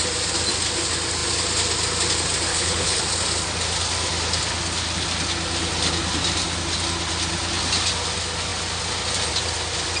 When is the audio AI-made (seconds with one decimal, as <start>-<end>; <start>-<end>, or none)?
2.5-3.0

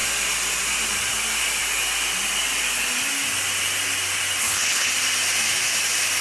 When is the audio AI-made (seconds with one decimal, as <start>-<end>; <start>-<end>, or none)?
4.4-4.9

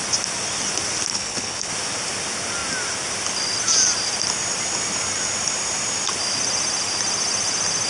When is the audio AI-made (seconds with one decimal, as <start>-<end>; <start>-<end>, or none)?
1.1-1.7

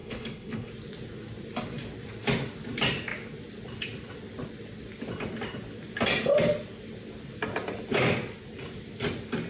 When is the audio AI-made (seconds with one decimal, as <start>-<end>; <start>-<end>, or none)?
0.0-0.7

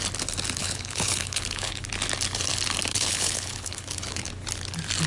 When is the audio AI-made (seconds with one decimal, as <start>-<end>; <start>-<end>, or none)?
0.6-1.9; 2.9-4.3

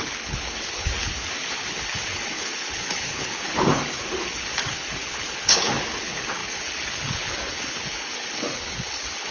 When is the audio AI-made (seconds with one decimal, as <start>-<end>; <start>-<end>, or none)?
0.0-9.3